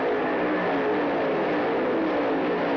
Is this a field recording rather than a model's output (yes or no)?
yes